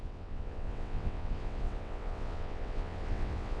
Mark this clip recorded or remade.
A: remade